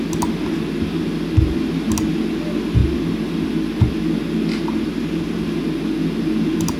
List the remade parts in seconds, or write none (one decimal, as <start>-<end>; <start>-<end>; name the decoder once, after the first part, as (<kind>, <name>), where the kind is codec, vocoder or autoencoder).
none